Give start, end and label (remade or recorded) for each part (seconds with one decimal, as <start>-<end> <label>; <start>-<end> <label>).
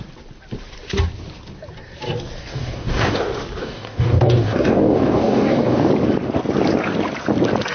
0.0-2.4 recorded; 2.4-3.2 remade; 3.2-3.6 recorded; 3.6-5.9 remade; 5.9-7.7 recorded